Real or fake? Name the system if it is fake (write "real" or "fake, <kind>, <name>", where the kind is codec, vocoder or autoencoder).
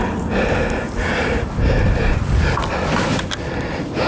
real